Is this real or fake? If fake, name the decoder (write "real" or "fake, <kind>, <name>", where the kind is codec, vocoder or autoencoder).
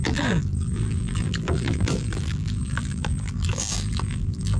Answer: fake, vocoder, BigVGAN v2